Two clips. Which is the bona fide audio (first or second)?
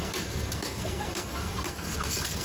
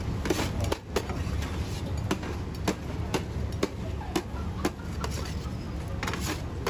second